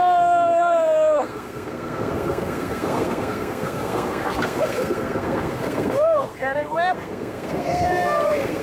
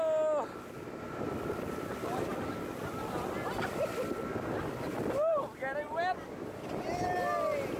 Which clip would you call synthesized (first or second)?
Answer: first